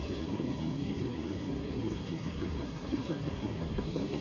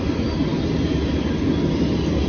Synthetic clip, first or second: first